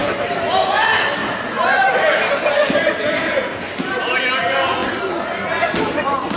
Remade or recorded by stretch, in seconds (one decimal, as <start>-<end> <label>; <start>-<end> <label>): 0.0-1.2 recorded; 1.2-1.8 remade; 1.8-6.4 recorded